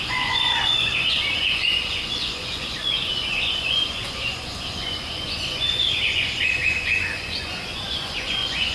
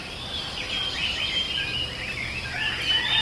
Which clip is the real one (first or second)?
second